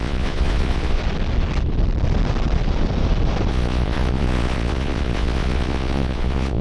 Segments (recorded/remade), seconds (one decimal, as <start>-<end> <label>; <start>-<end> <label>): 0.0-1.0 remade; 1.0-3.5 recorded; 3.5-6.6 remade